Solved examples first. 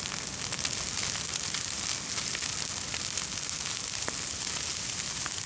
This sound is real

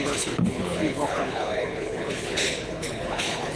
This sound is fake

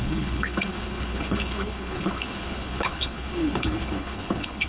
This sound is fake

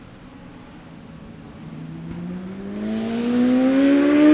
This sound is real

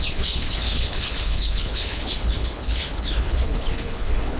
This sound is fake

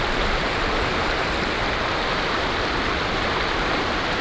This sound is real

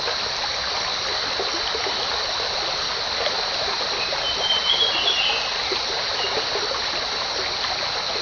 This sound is real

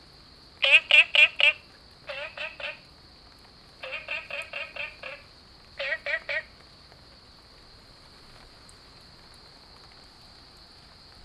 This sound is real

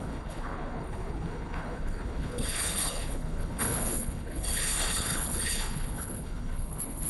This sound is fake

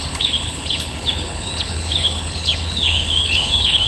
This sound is fake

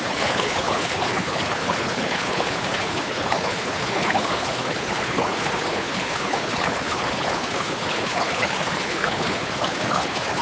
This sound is fake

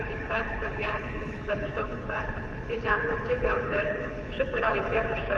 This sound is fake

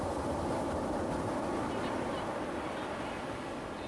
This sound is real